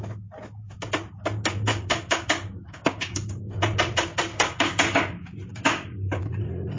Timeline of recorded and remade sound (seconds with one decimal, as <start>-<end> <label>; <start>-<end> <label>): 0.0-1.7 recorded; 1.7-3.6 remade; 3.6-4.3 recorded; 4.3-5.0 remade; 5.0-5.5 recorded; 5.5-6.2 remade; 6.2-6.8 recorded